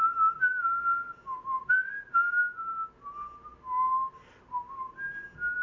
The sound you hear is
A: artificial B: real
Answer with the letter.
B